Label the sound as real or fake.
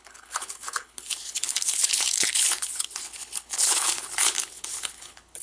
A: fake